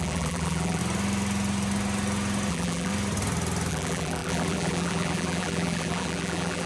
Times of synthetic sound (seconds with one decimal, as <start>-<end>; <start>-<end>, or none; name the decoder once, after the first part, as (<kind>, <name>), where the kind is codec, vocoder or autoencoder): 0.0-0.8 (vocoder, BigVGAN v2); 2.5-2.9; 3.7-6.7